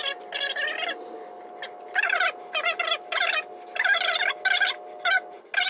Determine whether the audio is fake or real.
real